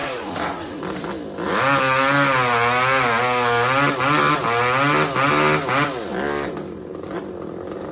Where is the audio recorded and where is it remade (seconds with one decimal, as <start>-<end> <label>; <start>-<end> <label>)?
0.0-0.8 remade; 0.8-7.9 recorded